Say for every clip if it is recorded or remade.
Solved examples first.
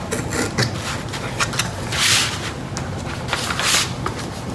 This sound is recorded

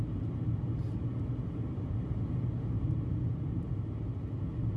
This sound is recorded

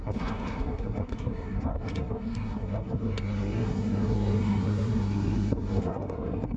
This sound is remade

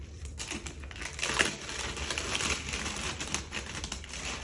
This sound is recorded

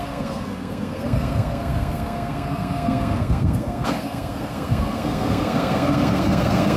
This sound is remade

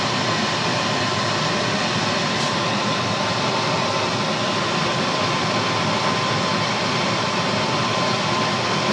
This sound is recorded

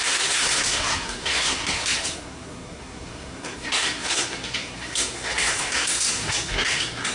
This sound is remade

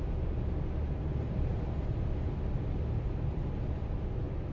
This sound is recorded